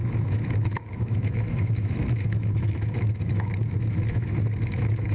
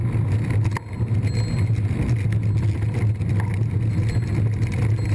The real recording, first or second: second